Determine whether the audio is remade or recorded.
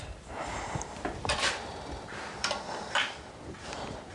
remade